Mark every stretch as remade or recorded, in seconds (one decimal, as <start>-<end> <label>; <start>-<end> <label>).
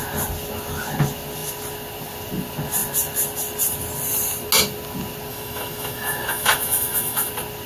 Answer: 0.0-5.3 recorded; 5.3-7.3 remade; 7.3-7.7 recorded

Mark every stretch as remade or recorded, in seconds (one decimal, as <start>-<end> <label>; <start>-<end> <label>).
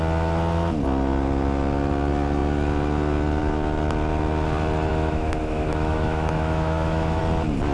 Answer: 0.0-4.9 recorded; 4.9-7.2 remade; 7.2-7.7 recorded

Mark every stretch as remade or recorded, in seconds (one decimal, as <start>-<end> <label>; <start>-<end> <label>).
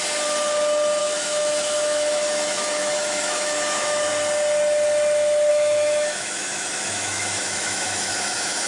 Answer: 0.0-1.0 recorded; 1.0-4.1 remade; 4.1-5.5 recorded; 5.5-8.7 remade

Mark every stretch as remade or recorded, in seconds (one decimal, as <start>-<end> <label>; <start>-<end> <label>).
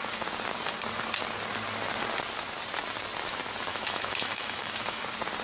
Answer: 0.0-3.7 recorded; 3.7-5.0 remade; 5.0-5.4 recorded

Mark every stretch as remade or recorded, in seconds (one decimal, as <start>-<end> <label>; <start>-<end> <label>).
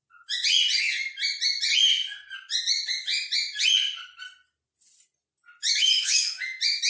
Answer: 0.0-5.8 recorded; 5.8-6.4 remade; 6.4-6.9 recorded